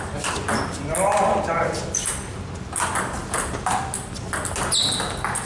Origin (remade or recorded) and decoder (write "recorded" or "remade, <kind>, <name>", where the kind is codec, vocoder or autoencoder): recorded